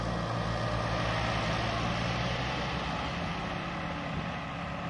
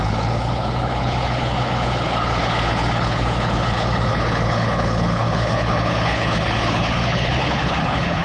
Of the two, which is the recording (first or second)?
first